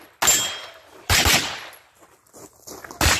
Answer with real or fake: real